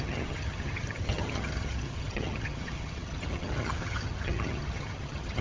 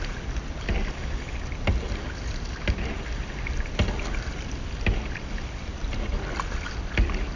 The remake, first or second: first